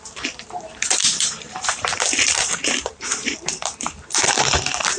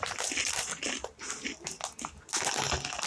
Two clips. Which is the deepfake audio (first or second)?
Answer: first